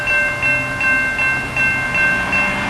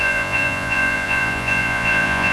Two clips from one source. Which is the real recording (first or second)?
first